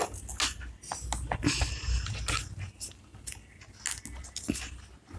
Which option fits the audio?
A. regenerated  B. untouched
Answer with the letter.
B